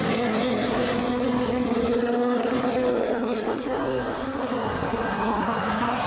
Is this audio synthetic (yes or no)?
yes